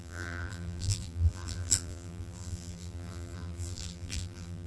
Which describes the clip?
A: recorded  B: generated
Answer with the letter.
B